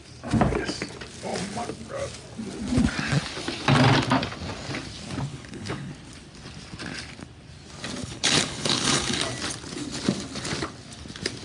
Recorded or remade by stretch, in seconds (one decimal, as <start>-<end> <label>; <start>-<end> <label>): 0.0-5.3 recorded; 5.3-5.9 remade; 5.9-8.0 recorded; 8.0-9.2 remade; 9.2-11.4 recorded